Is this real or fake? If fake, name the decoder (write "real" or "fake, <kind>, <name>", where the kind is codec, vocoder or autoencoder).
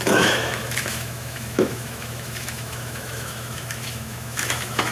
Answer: fake, autoencoder, DAC-VAE